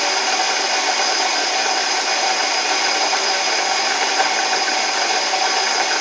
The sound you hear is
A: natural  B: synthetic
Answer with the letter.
A